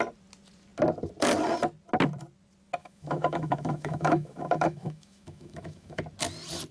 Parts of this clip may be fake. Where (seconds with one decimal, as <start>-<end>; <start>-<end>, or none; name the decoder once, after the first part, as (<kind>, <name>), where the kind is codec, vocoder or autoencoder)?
2.8-6.0 (autoencoder, DAC-VAE)